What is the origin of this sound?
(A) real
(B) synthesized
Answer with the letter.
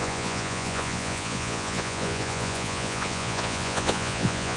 B